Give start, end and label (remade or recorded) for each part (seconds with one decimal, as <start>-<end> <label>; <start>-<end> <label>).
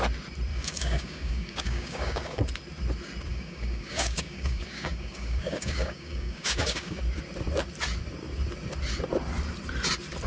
0.0-0.5 recorded; 0.5-2.4 remade; 2.4-3.3 recorded; 3.3-7.0 remade; 7.0-10.3 recorded